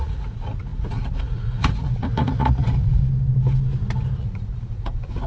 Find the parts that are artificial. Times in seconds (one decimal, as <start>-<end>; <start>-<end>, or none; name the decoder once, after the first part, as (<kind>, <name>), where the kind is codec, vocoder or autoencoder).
0.0-3.0 (vocoder, Vocos); 4.2-5.3